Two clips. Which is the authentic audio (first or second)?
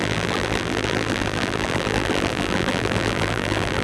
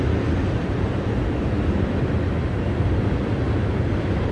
second